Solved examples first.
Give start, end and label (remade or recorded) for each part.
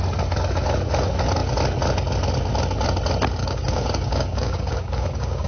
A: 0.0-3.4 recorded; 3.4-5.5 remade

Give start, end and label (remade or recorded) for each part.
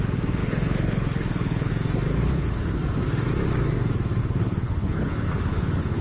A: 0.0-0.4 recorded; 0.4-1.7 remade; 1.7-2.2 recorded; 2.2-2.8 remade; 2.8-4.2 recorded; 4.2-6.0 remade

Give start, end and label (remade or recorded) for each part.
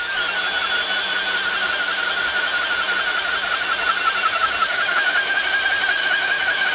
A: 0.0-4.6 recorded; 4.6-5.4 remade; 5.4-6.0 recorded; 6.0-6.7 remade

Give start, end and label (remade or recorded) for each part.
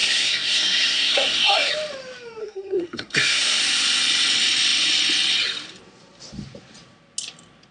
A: 0.0-1.7 remade; 1.7-2.4 recorded; 2.4-3.6 remade; 3.6-7.7 recorded